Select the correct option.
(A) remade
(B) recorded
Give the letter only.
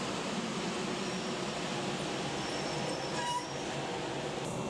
B